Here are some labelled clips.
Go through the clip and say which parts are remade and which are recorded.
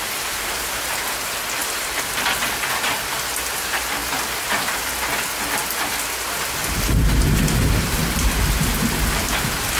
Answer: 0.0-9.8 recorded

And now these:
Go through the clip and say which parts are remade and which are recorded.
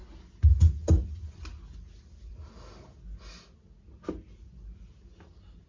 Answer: 0.0-5.7 recorded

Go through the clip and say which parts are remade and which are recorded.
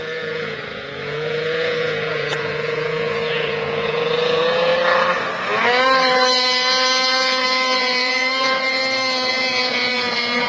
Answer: 0.0-4.7 remade; 4.7-7.8 recorded; 7.8-8.8 remade; 8.8-9.3 recorded; 9.3-10.5 remade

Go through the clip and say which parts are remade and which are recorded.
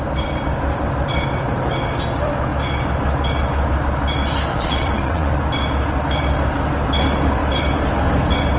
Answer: 0.0-4.5 recorded; 4.5-5.4 remade; 5.4-8.6 recorded